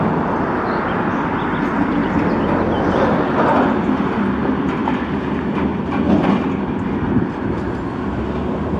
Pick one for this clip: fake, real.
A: real